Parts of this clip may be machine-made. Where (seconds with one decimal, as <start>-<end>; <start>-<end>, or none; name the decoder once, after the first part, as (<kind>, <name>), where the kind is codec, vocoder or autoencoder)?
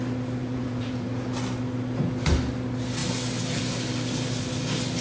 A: 0.4-1.1 (vocoder, Vocos)